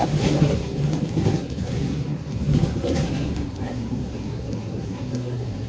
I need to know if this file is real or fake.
fake